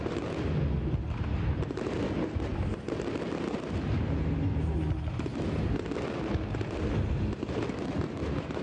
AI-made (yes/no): no